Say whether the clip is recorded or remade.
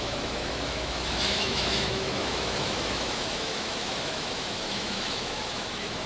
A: remade